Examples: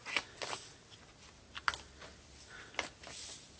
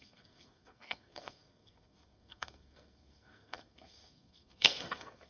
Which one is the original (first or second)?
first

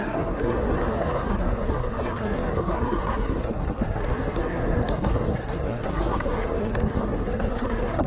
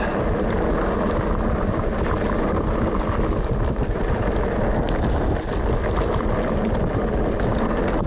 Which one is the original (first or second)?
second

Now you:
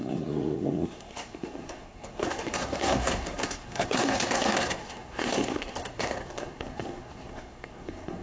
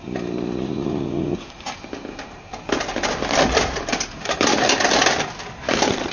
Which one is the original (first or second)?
second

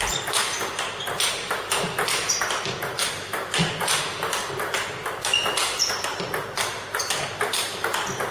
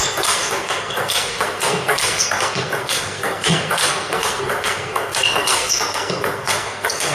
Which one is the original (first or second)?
first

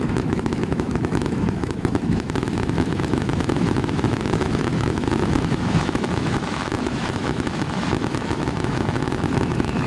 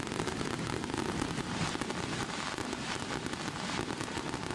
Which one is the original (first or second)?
second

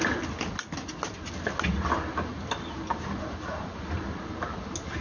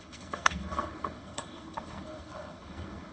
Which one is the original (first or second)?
first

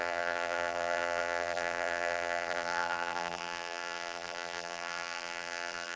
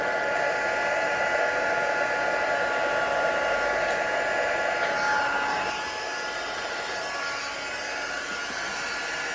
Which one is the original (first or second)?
second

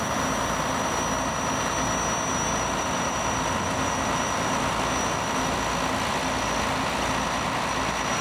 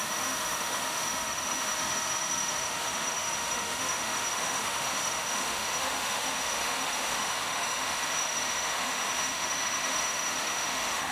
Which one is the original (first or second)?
first